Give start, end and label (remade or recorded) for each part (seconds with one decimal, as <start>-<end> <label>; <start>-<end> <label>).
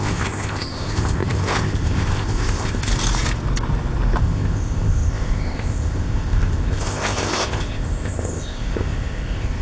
0.0-2.9 remade; 2.9-4.2 recorded; 4.2-9.6 remade